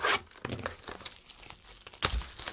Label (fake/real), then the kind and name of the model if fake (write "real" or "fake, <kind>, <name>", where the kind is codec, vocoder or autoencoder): real